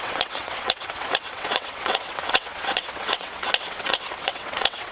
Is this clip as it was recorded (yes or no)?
no